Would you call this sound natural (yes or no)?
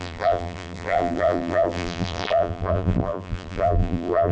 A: no